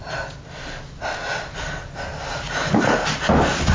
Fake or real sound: real